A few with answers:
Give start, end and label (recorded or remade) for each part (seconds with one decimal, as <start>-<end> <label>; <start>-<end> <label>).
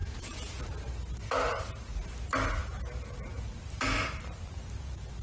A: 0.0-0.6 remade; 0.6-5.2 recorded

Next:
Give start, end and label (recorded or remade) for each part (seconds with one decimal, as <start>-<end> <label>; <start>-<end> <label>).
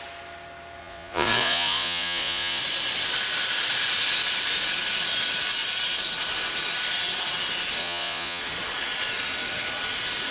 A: 0.0-0.8 recorded; 0.8-2.6 remade; 2.6-7.8 recorded; 7.8-8.4 remade; 8.4-10.3 recorded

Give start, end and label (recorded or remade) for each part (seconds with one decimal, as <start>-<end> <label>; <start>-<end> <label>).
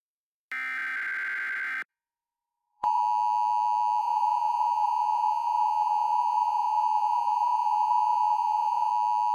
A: 0.0-1.9 recorded; 1.9-3.0 remade; 3.0-4.0 recorded; 4.0-8.9 remade; 8.9-9.3 recorded